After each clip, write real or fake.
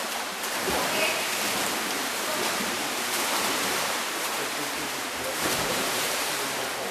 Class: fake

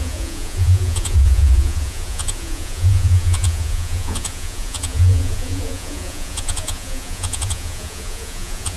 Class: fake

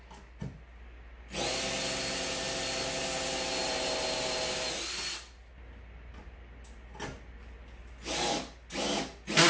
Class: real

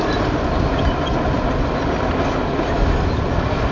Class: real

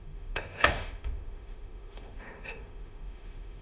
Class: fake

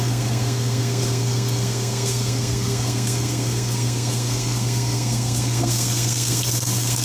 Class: fake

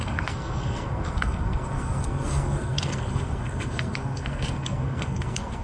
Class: fake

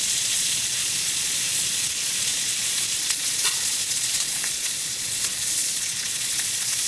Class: fake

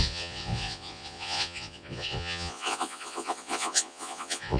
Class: fake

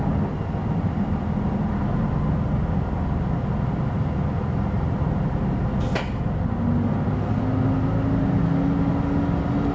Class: real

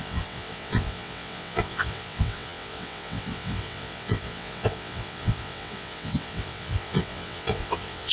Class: fake